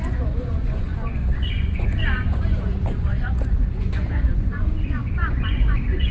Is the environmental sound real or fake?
fake